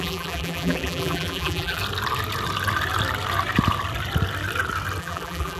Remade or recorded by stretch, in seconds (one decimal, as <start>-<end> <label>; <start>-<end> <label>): 0.0-1.8 remade; 1.8-5.0 recorded; 5.0-5.6 remade